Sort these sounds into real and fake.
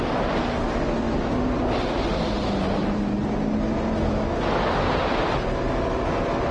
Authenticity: real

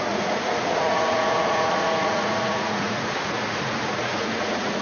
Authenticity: fake